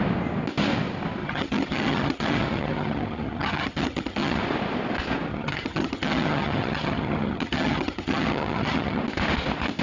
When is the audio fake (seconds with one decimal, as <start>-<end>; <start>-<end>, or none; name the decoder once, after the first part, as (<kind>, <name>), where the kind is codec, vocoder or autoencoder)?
1.2-4.4 (vocoder, HiFi-GAN); 5.3-9.0